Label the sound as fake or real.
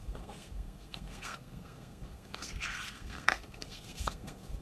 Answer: fake